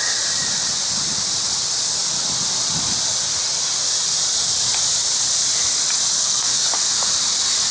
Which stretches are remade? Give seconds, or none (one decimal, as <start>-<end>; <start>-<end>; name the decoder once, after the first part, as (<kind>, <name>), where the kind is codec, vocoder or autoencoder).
6.2-6.7 (codec, SNAC)